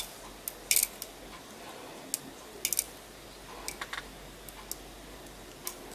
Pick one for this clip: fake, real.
real